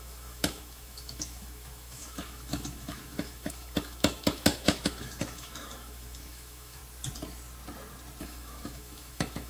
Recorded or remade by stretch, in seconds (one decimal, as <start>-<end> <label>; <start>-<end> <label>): 0.0-6.8 remade; 6.8-8.2 recorded; 8.2-9.5 remade